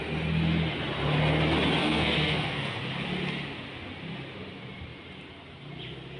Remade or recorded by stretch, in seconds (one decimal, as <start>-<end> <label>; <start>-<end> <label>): 0.0-1.8 recorded; 1.8-2.8 remade; 2.8-6.2 recorded